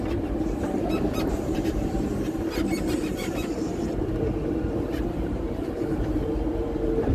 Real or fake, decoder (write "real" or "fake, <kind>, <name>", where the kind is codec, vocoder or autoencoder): fake, vocoder, BigVGAN v2